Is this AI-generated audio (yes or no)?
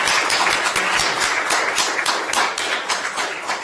yes